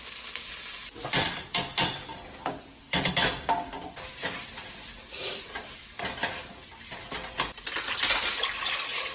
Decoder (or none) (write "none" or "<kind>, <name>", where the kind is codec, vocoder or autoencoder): none